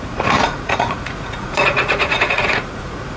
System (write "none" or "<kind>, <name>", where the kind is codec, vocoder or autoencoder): vocoder, Vocos